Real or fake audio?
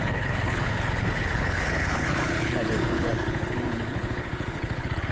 fake